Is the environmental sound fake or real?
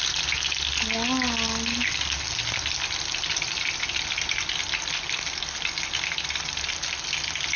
real